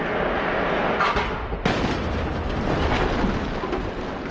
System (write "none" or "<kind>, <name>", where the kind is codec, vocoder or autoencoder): none